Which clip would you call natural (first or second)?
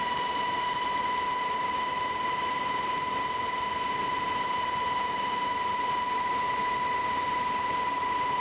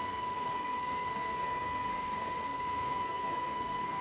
first